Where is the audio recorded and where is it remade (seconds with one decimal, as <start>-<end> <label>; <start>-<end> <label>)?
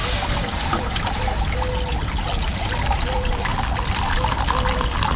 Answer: 0.0-3.1 recorded; 3.1-3.5 remade; 3.5-4.7 recorded; 4.7-5.2 remade